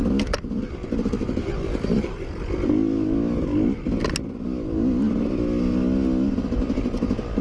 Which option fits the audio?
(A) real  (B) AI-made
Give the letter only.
A